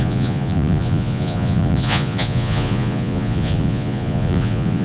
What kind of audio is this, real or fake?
fake